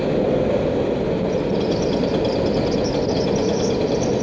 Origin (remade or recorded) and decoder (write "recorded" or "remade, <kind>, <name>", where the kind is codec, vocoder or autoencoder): recorded